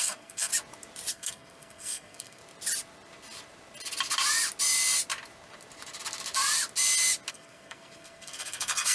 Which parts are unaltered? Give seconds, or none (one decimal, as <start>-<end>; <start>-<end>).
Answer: 0.5-1.1; 2.4-7.3